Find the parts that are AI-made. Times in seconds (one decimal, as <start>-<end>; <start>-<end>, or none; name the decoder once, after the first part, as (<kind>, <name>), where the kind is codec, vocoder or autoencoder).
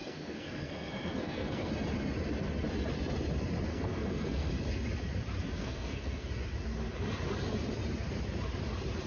0.0-1.7 (codec, SNAC); 3.7-4.5; 5.6-6.3